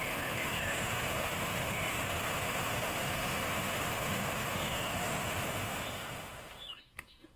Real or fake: fake